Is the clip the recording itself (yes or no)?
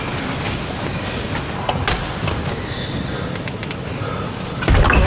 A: yes